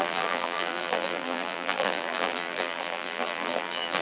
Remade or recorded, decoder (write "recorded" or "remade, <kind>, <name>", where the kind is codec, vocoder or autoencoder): remade, vocoder, BigVGAN v2